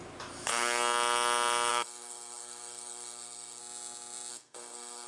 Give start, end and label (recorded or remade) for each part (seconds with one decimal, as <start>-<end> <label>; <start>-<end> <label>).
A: 0.0-1.7 recorded; 1.7-3.6 remade; 3.6-4.3 recorded; 4.3-5.1 remade